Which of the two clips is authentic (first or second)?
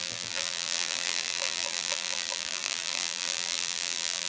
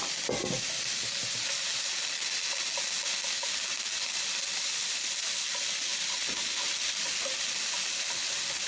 second